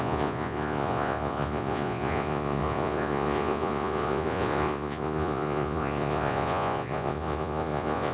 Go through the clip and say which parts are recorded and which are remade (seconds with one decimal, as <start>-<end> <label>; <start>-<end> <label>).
0.0-8.1 remade